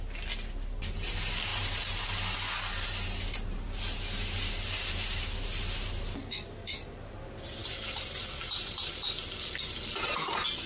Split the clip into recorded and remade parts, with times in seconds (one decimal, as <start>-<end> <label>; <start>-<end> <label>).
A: 0.0-10.7 recorded

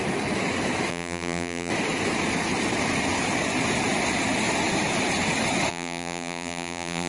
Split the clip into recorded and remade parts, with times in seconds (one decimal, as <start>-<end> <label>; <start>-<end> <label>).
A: 0.0-0.9 recorded; 0.9-1.7 remade; 1.7-5.7 recorded; 5.7-7.1 remade

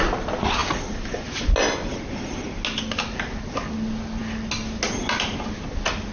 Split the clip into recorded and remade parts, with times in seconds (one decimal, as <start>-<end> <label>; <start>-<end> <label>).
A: 0.0-6.1 recorded

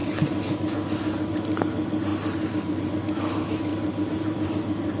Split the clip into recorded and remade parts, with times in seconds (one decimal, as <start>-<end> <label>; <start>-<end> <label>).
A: 0.0-0.6 remade; 0.6-2.1 recorded; 2.1-2.9 remade; 2.9-3.7 recorded; 3.7-5.0 remade